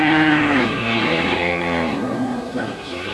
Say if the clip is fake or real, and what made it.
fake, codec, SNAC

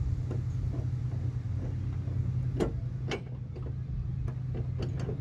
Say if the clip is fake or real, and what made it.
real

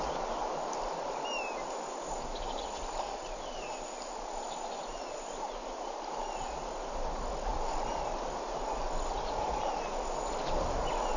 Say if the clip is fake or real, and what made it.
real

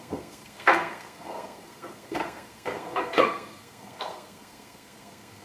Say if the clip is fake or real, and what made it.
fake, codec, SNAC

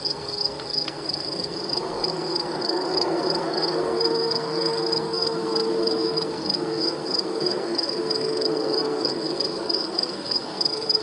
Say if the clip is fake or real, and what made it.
fake, codec, SNAC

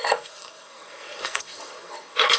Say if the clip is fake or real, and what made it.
fake, codec, SNAC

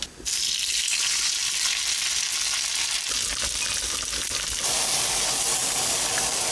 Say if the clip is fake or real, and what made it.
real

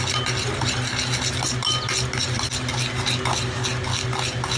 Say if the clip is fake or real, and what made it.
real